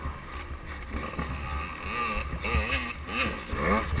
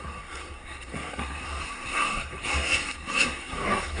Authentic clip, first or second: first